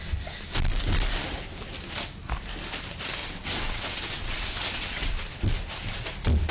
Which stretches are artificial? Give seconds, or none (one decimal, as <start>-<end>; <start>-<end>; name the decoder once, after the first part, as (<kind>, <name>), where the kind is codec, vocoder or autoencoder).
3.2-5.3 (vocoder, WaveNeXt)